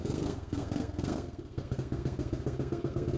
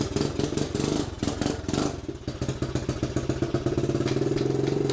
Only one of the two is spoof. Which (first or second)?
first